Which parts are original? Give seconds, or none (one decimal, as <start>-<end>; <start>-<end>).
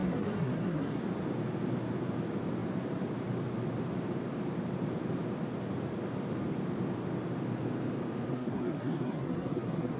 1.0-8.3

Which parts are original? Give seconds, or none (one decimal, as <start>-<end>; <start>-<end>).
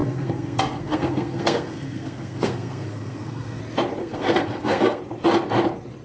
3.6-4.0; 5.0-6.0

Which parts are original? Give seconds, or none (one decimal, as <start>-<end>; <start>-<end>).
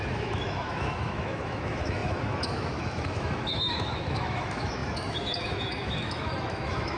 none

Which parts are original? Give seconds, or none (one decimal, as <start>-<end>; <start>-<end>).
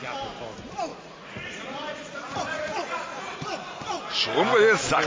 0.0-0.9; 4.0-5.1